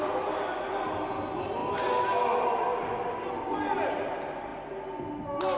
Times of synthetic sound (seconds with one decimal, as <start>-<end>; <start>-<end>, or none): none